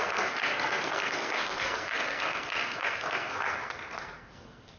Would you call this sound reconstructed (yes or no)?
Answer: yes